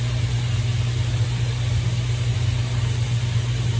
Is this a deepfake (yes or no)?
no